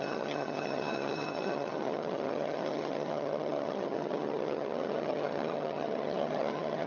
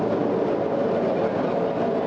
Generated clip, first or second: first